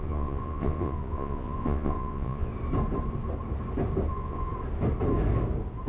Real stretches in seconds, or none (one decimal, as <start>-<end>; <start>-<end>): 2.5-4.1; 4.5-5.9